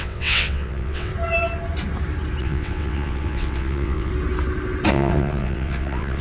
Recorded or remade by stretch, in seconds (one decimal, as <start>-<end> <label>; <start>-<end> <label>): 0.0-1.1 remade; 1.1-2.4 recorded; 2.4-4.1 remade; 4.1-4.9 recorded; 4.9-6.2 remade